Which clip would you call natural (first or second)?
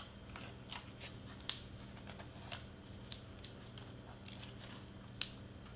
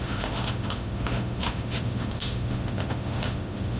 first